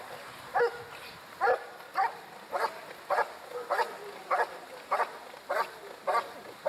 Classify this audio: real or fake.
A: real